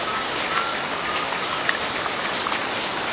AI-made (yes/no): no